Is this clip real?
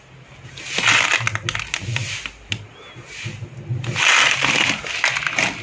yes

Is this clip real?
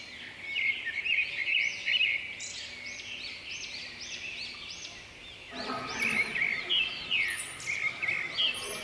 yes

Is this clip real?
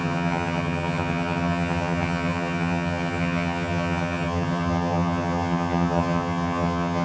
no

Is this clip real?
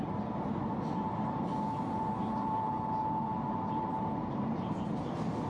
no